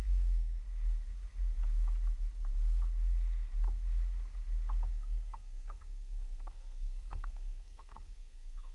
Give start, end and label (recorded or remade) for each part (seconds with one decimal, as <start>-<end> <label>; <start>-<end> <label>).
0.0-0.6 remade; 0.6-4.9 recorded; 4.9-8.7 remade